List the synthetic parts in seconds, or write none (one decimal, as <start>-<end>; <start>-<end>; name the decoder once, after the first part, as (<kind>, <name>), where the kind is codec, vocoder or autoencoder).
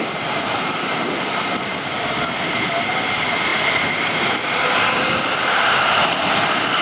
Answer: 0.0-1.7 (vocoder, BigVGAN v2); 2.2-3.5; 5.9-6.8